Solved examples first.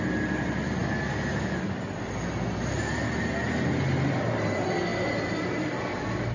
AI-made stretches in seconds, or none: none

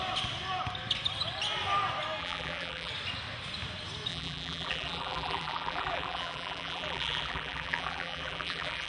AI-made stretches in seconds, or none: 2.2-2.9; 4.1-8.9

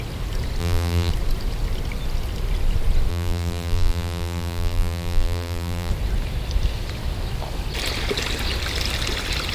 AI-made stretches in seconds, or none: 0.6-1.1; 3.1-5.9

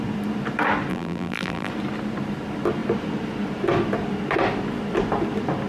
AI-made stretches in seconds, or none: 0.9-1.7

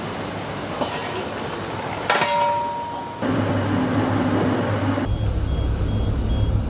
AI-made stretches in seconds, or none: none

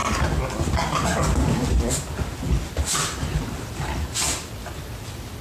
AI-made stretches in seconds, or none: none

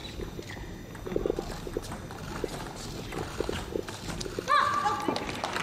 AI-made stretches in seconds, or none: none

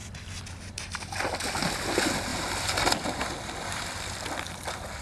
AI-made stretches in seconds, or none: 2.3-2.8